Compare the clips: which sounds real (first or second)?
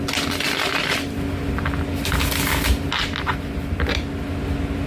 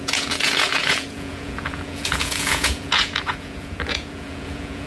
first